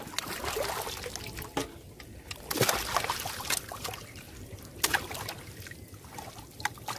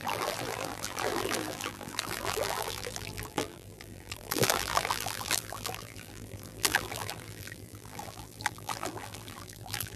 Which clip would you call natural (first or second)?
first